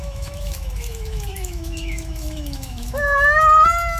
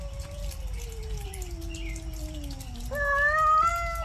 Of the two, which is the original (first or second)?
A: second